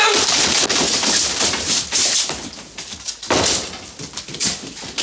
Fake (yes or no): no